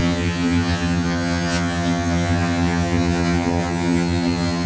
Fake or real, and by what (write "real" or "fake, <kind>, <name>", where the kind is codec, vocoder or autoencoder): fake, vocoder, HiFi-GAN